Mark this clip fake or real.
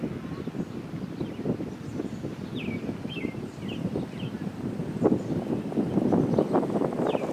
real